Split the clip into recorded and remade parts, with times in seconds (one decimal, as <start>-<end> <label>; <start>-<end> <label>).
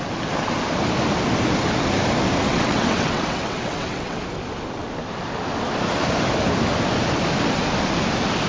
0.0-2.5 recorded; 2.5-4.2 remade; 4.2-8.5 recorded